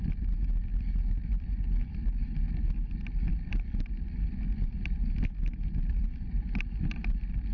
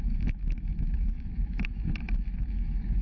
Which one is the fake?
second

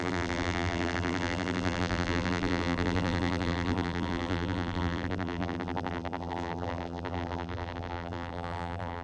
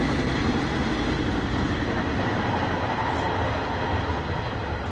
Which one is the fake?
first